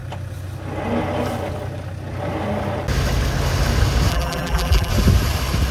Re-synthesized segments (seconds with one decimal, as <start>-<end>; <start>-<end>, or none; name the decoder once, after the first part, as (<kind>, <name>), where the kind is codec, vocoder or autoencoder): 4.1-4.9 (vocoder, BigVGAN v2)